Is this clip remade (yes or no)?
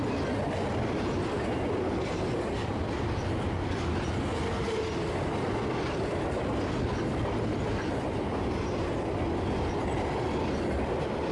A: no